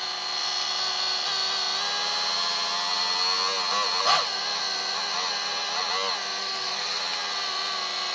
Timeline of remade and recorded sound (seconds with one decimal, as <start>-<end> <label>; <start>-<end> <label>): 0.0-6.4 recorded; 6.4-7.0 remade; 7.0-8.1 recorded